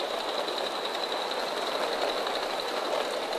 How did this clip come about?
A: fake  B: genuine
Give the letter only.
B